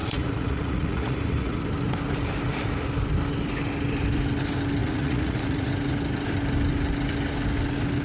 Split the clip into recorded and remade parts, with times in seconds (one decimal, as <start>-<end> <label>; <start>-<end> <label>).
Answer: 0.0-1.6 remade; 1.6-4.8 recorded; 4.8-5.7 remade; 5.7-8.0 recorded